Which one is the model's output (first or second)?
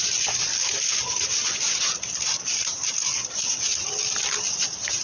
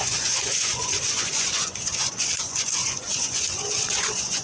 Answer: second